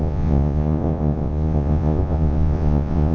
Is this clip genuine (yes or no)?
no